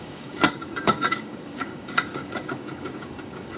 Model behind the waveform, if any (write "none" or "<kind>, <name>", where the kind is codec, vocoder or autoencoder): codec, DAC